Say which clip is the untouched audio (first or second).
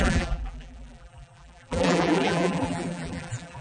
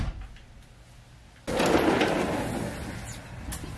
second